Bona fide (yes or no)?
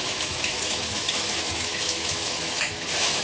no